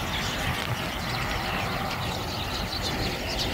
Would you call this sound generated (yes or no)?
yes